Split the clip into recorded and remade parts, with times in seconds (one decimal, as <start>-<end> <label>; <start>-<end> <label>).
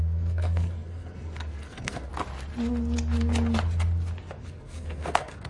0.0-2.1 remade; 2.1-4.4 recorded; 4.4-5.5 remade